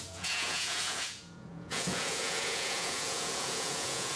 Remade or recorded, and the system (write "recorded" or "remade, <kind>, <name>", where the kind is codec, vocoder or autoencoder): remade, vocoder, Vocos